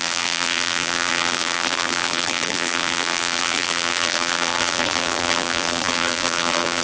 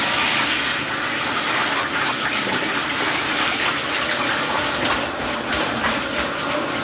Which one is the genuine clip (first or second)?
second